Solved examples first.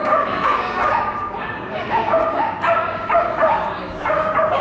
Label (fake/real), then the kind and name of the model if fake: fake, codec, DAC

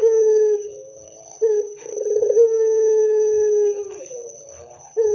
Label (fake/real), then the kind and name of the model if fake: fake, codec, HILCodec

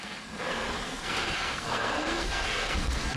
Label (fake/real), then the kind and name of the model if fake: fake, codec, SNAC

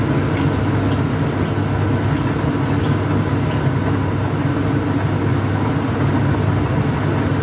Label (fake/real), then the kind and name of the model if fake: real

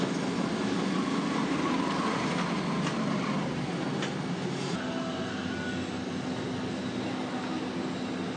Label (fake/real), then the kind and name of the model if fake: real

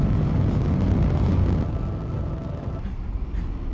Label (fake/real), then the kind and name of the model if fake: real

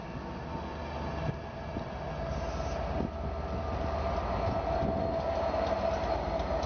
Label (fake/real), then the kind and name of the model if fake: real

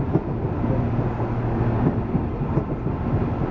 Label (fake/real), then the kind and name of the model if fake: real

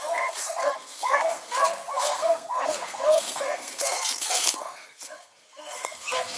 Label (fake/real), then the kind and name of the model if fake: fake, codec, SNAC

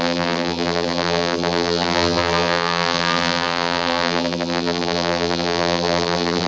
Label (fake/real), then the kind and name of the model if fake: fake, vocoder, BigVGAN v2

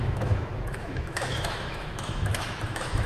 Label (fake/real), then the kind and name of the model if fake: fake, autoencoder, DAC-VAE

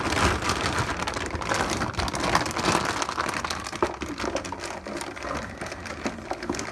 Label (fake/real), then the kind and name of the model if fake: real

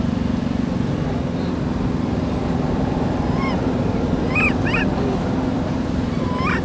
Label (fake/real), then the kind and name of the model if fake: real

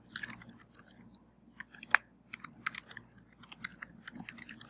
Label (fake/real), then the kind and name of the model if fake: real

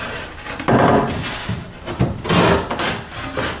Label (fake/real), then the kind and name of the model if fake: real